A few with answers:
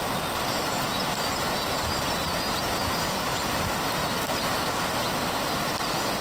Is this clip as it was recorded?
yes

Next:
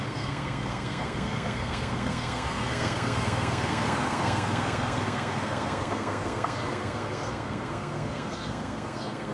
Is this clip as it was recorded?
no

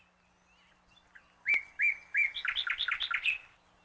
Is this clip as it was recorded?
yes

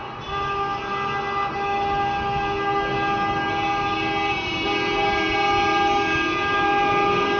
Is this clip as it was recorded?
yes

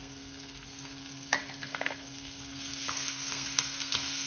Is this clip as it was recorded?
no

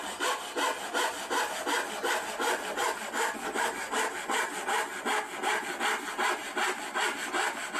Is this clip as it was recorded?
yes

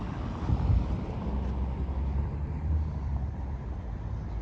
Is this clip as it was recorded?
no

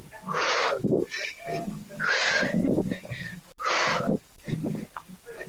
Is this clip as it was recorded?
no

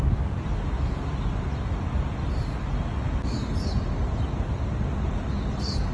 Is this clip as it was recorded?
yes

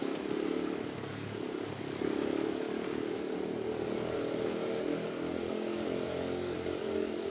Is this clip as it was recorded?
no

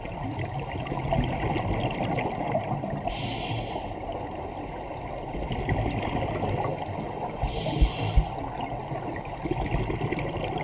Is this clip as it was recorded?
yes